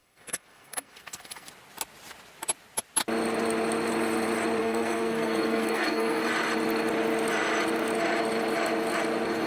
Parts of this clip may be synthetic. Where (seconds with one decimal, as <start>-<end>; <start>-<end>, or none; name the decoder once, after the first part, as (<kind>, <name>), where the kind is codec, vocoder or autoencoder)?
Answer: 0.0-1.5 (codec, SNAC); 4.6-6.2